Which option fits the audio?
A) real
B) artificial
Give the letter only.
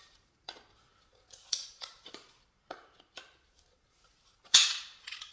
B